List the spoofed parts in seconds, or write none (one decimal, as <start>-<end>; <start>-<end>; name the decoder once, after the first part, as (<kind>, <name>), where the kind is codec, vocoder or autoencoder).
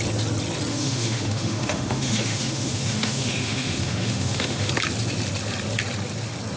0.7-4.7 (autoencoder, DAC-VAE)